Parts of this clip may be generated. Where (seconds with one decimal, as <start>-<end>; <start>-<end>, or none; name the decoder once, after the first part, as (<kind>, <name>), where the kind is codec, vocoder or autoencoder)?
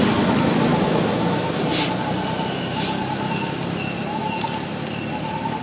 0.7-1.6 (autoencoder, DAC-VAE)